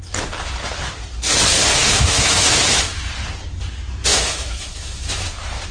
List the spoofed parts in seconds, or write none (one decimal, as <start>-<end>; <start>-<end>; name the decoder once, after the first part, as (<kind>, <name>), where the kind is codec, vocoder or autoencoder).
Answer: 1.8-3.0 (autoencoder, DAC-VAE); 4.1-5.2